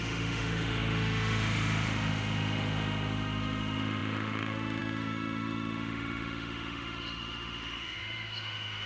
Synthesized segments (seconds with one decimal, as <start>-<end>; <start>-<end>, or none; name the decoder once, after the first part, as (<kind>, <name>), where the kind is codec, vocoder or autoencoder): 0.0-8.9 (autoencoder, DAC-VAE)